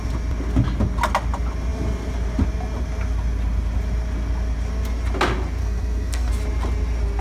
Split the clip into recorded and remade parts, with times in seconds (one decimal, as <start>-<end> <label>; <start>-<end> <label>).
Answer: 0.0-5.6 recorded; 5.6-6.3 remade; 6.3-7.2 recorded